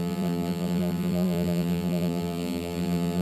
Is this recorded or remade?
remade